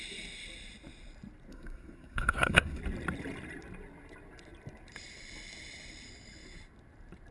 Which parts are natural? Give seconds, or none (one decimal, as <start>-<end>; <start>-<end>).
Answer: 0.0-1.5; 2.8-7.3